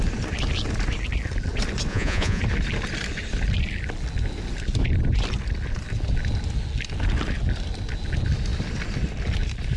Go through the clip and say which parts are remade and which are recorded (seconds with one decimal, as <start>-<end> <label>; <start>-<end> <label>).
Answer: 0.0-1.9 recorded; 1.9-2.4 remade; 2.4-9.8 recorded

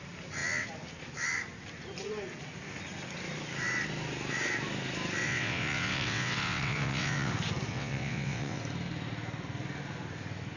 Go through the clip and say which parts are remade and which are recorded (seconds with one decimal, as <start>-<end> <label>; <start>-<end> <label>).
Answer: 0.0-5.2 recorded; 5.2-7.3 remade; 7.3-7.7 recorded; 7.7-8.6 remade; 8.6-10.6 recorded